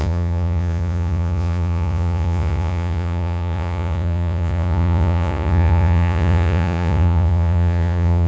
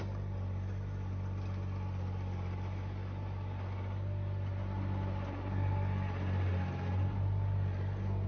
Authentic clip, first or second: second